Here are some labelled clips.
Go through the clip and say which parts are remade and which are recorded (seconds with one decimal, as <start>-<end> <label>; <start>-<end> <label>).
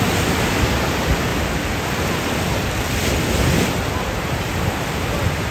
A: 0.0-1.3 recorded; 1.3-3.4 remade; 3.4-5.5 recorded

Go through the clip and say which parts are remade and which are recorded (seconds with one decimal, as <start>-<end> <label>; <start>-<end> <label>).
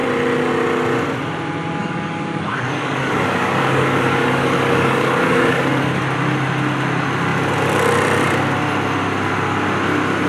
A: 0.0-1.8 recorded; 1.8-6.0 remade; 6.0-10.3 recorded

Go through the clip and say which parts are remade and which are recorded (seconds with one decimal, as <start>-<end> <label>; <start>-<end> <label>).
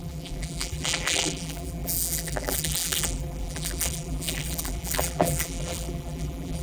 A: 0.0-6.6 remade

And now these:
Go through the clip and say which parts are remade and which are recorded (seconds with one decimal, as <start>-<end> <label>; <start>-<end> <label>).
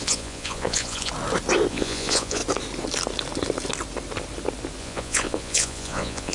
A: 0.0-1.1 remade; 1.1-1.7 recorded; 1.7-2.4 remade; 2.4-4.8 recorded; 4.8-6.3 remade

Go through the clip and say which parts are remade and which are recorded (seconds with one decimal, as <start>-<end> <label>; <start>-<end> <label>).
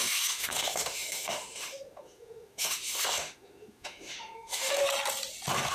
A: 0.0-4.8 remade; 4.8-5.7 recorded